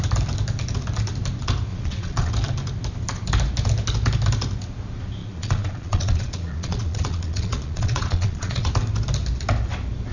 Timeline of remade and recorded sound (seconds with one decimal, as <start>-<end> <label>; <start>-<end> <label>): 0.0-1.7 recorded; 1.7-2.3 remade; 2.3-5.2 recorded; 5.2-8.7 remade; 8.7-10.1 recorded